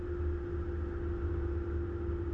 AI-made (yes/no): no